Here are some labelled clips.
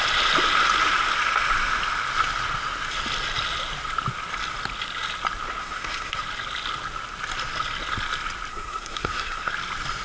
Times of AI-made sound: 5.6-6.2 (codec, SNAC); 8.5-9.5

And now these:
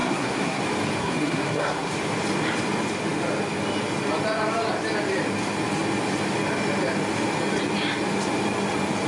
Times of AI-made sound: 0.0-0.6 (codec, SNAC); 1.0-1.9

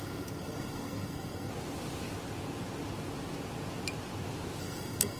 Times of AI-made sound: 0.0-1.5 (codec, SNAC); 4.6-5.2

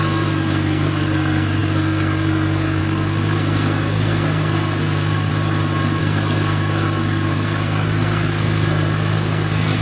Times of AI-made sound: 0.0-5.3 (codec, SNAC); 6.0-9.8

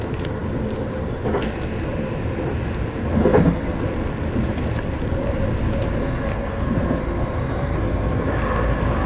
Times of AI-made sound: 3.0-3.8 (codec, SNAC); 6.0-8.1

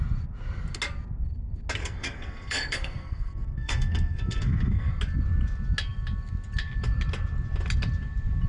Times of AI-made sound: 1.8-4.9 (codec, SNAC)

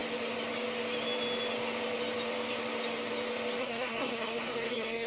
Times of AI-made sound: 3.6-5.1 (codec, SNAC)

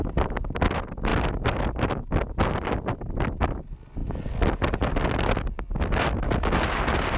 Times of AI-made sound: none